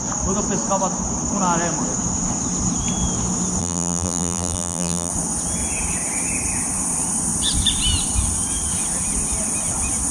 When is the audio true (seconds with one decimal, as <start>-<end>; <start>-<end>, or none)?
0.0-3.6; 5.1-10.1